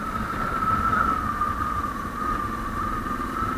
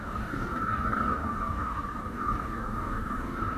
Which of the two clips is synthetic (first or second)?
second